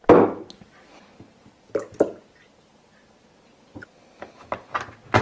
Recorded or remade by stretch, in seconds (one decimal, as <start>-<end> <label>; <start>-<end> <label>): 0.0-5.2 recorded